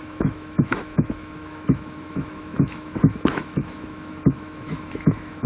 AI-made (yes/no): yes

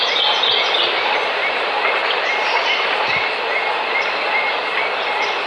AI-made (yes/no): no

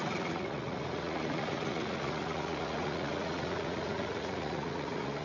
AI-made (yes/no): yes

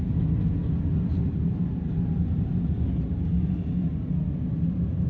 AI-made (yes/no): no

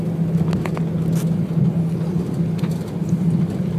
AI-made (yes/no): no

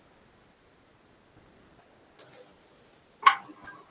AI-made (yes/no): no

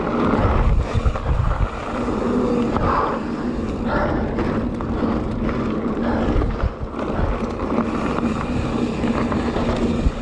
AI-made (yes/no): no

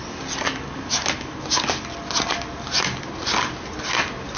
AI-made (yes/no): no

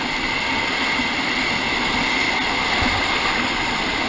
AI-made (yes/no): no